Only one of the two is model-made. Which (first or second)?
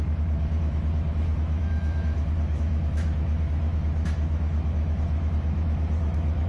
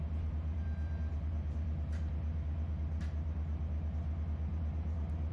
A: first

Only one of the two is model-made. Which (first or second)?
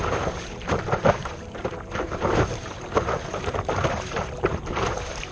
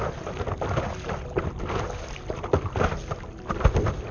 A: first